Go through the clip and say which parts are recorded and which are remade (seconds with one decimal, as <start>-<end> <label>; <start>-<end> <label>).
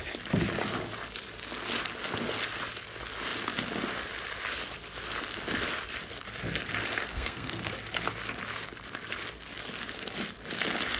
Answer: 0.0-7.1 recorded; 7.1-7.7 remade; 7.7-11.0 recorded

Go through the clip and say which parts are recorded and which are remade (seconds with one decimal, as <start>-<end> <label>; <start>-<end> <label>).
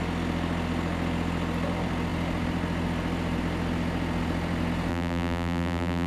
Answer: 0.0-4.9 recorded; 4.9-6.1 remade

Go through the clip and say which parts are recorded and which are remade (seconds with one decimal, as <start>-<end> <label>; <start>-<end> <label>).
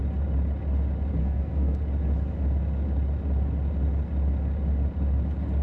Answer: 0.0-1.2 recorded; 1.2-1.8 remade; 1.8-5.6 recorded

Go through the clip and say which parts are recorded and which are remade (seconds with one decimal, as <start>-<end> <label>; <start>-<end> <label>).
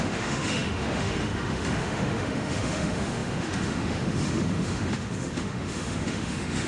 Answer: 0.0-6.7 remade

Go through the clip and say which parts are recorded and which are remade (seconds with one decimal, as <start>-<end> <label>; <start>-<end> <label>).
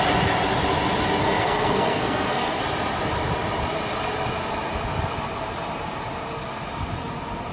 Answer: 0.0-1.2 recorded; 1.2-2.6 remade; 2.6-7.5 recorded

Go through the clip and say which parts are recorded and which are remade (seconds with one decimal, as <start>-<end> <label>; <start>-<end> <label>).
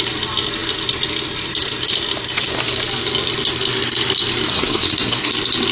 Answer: 0.0-4.5 recorded; 4.5-5.3 remade; 5.3-5.7 recorded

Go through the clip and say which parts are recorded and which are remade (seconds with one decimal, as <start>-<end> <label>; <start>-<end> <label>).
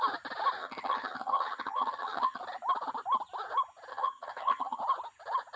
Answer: 0.0-0.6 recorded; 0.6-2.4 remade; 2.4-3.9 recorded; 3.9-4.8 remade; 4.8-5.6 recorded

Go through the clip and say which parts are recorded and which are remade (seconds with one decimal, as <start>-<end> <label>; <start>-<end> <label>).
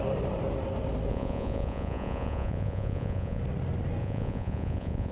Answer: 0.0-1.1 recorded; 1.1-3.4 remade; 3.4-4.0 recorded; 4.0-5.1 remade